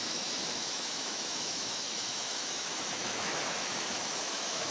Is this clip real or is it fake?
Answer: fake